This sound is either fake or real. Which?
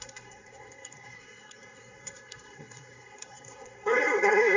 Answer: fake